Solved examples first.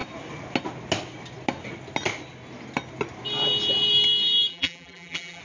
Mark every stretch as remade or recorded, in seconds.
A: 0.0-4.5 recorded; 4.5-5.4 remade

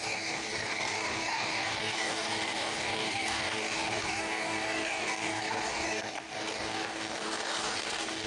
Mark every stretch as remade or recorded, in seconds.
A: 0.0-8.3 remade

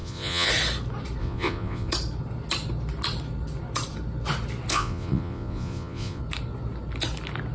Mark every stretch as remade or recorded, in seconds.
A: 0.0-0.5 remade; 0.5-1.2 recorded; 1.2-1.9 remade; 1.9-4.7 recorded; 4.7-6.2 remade; 6.2-7.5 recorded

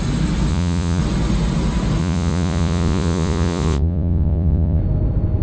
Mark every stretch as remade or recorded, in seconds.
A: 0.0-0.5 recorded; 0.5-1.0 remade; 1.0-2.0 recorded; 2.0-4.8 remade; 4.8-5.4 recorded

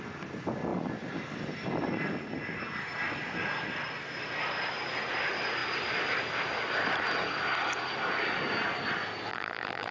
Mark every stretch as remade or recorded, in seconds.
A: 0.0-9.3 recorded; 9.3-9.9 remade